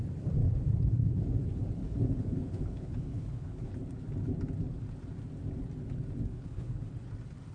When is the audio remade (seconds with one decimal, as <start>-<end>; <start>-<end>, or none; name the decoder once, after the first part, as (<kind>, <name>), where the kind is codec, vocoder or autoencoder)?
0.4-1.2 (codec, HILCodec); 1.8-3.7; 6.3-6.9